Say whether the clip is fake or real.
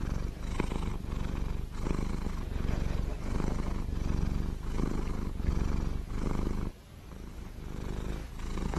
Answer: real